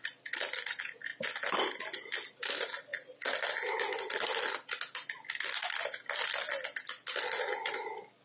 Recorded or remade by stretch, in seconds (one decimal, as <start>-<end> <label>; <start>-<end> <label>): 0.0-8.2 recorded